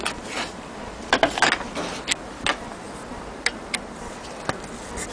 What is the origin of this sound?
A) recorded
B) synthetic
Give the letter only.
A